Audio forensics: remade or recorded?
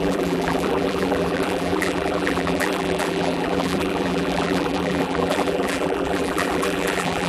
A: remade